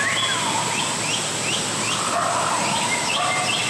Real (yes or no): yes